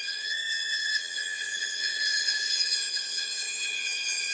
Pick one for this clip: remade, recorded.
remade